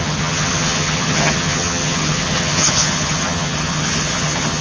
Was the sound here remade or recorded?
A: remade